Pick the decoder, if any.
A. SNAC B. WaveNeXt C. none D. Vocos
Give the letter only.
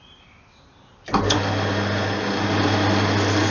C